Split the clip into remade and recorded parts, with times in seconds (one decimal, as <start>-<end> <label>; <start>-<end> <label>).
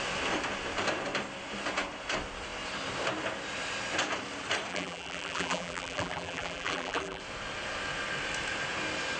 0.0-4.7 recorded; 4.7-7.2 remade; 7.2-9.2 recorded